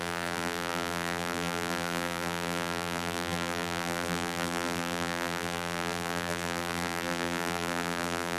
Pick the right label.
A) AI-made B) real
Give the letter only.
A